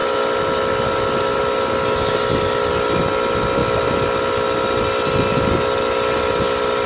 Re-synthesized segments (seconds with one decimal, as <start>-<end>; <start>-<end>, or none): none